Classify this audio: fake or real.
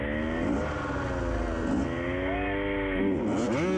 real